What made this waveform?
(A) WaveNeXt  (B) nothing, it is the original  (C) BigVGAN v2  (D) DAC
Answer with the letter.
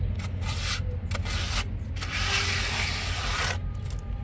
B